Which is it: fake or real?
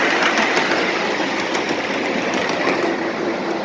real